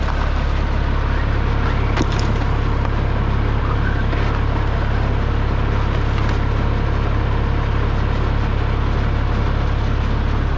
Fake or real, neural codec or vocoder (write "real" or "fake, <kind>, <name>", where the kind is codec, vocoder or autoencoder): real